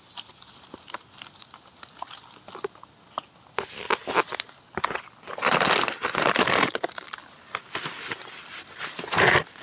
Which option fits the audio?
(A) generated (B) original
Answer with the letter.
B